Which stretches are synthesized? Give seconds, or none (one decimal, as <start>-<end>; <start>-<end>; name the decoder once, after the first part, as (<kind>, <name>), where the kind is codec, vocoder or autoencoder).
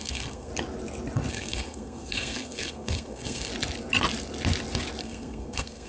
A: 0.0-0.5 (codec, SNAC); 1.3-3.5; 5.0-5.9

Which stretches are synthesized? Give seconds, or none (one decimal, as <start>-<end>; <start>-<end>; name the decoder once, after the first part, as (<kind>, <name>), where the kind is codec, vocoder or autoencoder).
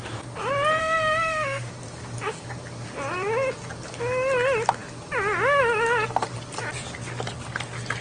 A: 0.8-1.7 (autoencoder, DAC-VAE)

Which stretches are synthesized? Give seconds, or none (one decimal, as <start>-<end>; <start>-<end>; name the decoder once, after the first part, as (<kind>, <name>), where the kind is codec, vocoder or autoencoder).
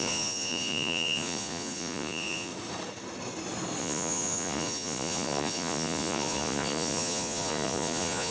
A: 0.0-2.5 (vocoder, Vocos); 3.8-8.3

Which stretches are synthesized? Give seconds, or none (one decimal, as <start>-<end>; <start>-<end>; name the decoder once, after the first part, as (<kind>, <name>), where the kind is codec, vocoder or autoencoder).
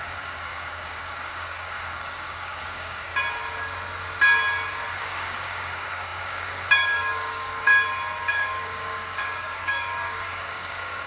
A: 0.0-3.1 (codec, DAC); 5.0-7.7; 8.3-11.1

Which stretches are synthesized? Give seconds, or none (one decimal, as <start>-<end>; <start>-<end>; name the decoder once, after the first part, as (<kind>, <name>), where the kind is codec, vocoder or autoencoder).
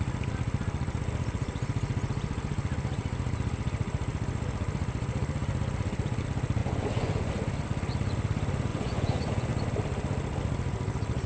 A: 6.6-7.3 (vocoder, Vocos); 8.7-9.5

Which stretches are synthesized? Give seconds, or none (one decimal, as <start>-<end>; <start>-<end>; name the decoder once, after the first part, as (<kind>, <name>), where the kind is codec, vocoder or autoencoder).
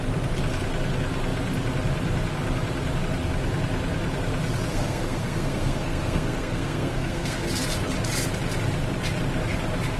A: 4.7-7.5 (codec, SNAC)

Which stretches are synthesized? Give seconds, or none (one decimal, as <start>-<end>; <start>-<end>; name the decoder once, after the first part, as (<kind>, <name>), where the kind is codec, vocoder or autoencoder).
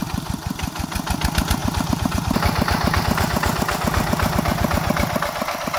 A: 1.6-3.0 (vocoder, BigVGAN v2)